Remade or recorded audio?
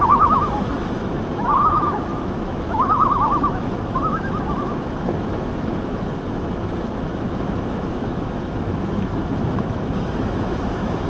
remade